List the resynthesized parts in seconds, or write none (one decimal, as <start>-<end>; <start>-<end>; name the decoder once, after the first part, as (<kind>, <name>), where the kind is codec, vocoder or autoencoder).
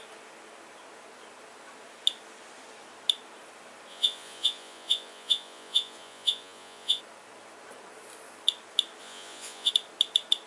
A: 3.9-7.0 (vocoder, Vocos); 9.0-9.7